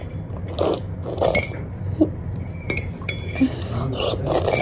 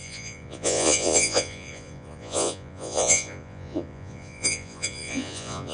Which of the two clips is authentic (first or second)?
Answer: first